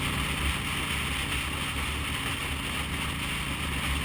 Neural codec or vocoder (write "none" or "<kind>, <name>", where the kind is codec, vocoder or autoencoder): none